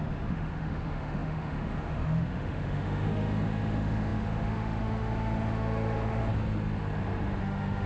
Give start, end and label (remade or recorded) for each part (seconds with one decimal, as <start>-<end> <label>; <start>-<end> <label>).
0.0-6.3 remade; 6.3-7.4 recorded; 7.4-7.9 remade